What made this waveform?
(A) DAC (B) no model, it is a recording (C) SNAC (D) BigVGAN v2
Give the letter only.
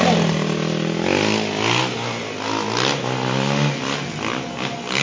B